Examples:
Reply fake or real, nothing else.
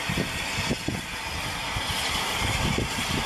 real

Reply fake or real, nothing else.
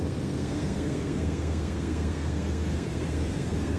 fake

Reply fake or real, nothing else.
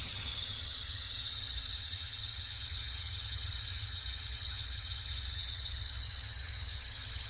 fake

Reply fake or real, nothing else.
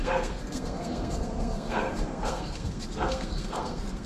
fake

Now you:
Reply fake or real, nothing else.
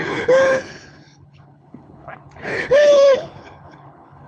fake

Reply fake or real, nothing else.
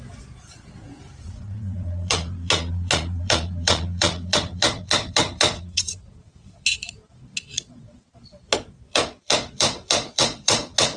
fake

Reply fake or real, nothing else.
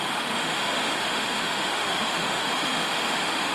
fake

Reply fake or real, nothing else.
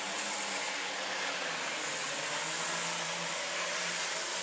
real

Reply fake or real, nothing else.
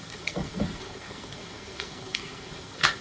fake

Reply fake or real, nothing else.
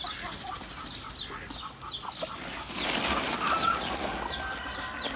real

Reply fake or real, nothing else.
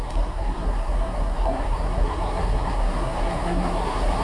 fake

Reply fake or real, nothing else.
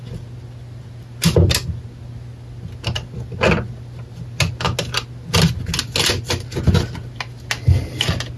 real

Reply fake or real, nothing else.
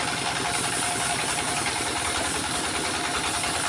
real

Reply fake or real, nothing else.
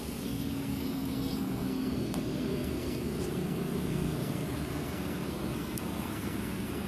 fake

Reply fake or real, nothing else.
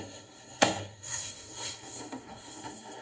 fake